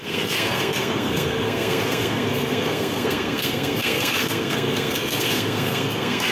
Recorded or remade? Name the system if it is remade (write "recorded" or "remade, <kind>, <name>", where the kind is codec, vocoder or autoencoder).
remade, codec, SNAC